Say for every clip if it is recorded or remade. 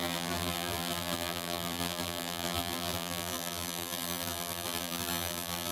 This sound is remade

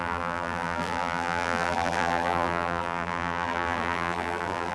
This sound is remade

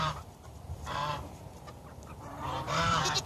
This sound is remade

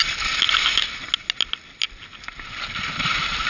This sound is recorded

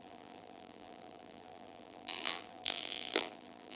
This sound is remade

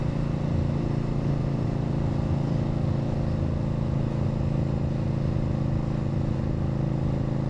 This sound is recorded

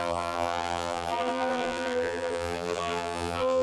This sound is remade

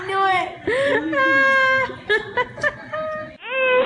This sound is recorded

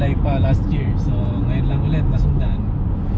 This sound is recorded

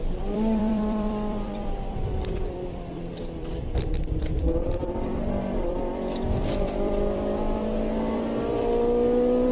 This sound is remade